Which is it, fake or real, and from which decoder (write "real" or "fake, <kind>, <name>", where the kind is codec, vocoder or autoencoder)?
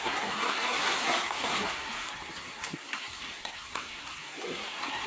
fake, codec, SNAC